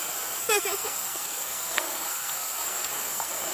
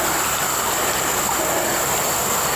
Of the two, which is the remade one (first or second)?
first